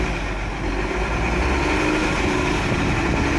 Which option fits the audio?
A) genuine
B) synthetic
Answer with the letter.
A